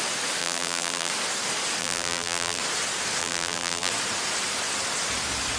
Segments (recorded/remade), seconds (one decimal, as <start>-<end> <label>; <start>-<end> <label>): 0.0-0.4 recorded; 0.4-1.1 remade; 1.1-1.8 recorded; 1.8-2.6 remade; 2.6-3.2 recorded; 3.2-3.9 remade; 3.9-5.6 recorded